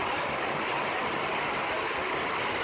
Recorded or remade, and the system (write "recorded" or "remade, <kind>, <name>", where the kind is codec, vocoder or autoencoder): recorded